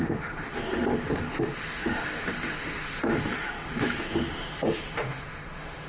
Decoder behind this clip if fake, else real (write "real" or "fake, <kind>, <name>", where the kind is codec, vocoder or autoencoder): fake, autoencoder, DAC-VAE